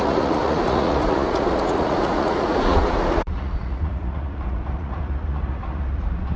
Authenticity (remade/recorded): remade